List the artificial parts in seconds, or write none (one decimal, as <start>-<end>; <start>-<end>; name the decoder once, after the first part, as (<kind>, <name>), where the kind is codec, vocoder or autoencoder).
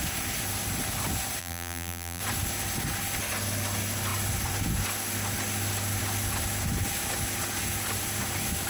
1.4-2.2 (vocoder, BigVGAN v2)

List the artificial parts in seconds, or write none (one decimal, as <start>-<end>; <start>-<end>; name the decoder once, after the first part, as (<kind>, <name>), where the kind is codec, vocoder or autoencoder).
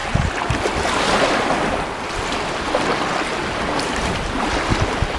none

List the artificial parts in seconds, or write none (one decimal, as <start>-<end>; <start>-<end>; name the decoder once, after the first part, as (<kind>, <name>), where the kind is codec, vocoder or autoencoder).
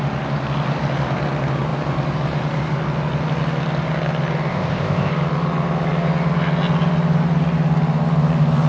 4.5-5.1 (codec, ZipCodec)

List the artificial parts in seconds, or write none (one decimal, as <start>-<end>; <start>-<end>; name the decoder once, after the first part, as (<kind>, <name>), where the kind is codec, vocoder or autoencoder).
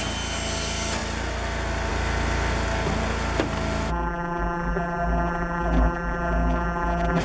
3.9-7.2 (vocoder, BigVGAN v2)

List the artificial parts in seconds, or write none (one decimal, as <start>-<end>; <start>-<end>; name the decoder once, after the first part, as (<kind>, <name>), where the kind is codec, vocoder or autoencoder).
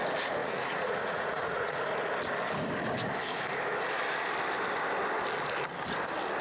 0.4-1.8 (vocoder, Vocos)